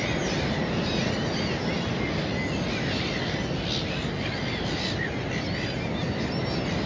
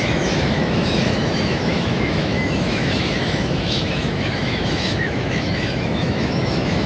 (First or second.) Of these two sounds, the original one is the first